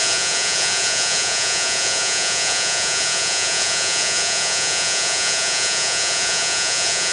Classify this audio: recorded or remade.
remade